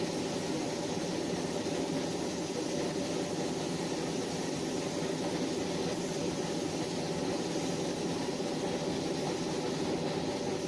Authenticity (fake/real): real